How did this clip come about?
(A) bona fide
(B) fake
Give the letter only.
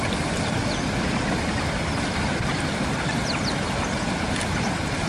A